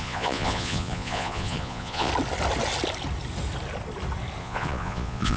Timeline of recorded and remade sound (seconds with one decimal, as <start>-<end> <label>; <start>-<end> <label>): 0.0-2.1 remade; 2.1-4.4 recorded; 4.4-5.4 remade